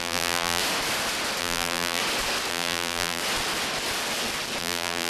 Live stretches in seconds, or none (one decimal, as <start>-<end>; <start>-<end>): 0.6-1.4; 2.0-2.5; 3.2-4.6

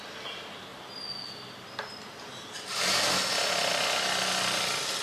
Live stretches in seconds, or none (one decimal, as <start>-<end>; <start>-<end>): 0.0-5.0

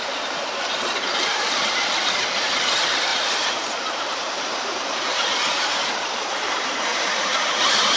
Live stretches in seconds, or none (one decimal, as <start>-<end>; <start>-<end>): 0.0-3.1; 7.6-8.0

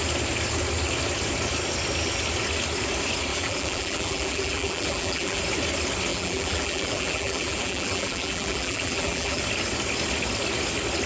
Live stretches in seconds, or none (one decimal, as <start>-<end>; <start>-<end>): 0.0-3.3; 5.4-6.1; 9.4-11.1

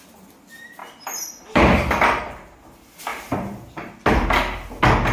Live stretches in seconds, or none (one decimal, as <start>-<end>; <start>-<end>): 0.0-3.1; 3.9-5.1

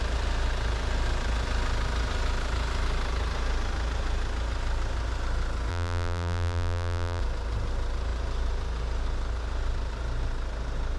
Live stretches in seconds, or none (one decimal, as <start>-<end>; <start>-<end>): 0.0-5.7; 7.2-11.0

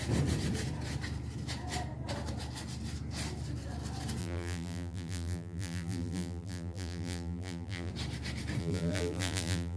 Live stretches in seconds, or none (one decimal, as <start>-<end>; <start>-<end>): 0.0-4.2; 7.9-8.6

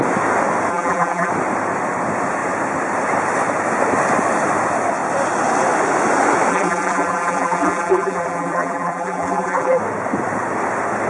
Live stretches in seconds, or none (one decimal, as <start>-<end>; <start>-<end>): 0.0-0.7; 1.3-6.5; 9.8-11.1